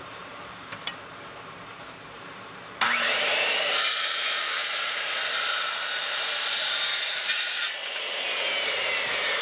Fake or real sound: fake